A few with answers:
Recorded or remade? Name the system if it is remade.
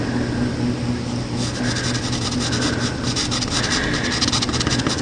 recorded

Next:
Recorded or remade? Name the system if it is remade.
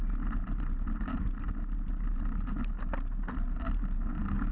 recorded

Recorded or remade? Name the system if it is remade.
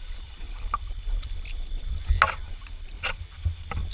recorded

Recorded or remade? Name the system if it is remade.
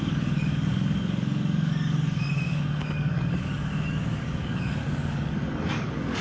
remade, codec, DAC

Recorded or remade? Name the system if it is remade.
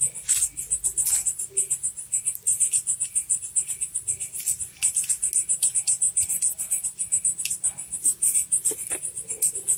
recorded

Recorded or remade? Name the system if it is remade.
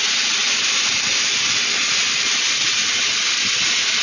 recorded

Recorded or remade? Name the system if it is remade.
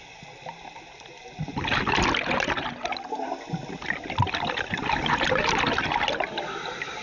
recorded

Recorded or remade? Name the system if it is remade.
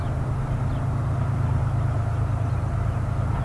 recorded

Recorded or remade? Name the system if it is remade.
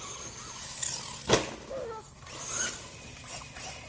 recorded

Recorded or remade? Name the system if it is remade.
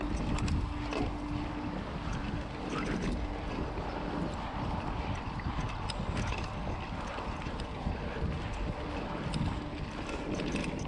recorded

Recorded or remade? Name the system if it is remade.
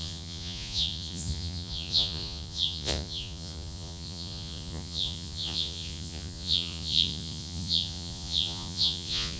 remade, vocoder, Vocos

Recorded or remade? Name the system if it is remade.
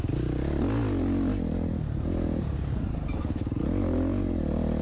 recorded